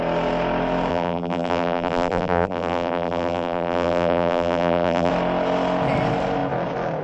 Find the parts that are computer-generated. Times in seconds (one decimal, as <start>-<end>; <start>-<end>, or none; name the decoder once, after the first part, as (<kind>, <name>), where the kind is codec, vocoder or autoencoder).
0.9-5.1 (vocoder, BigVGAN v2)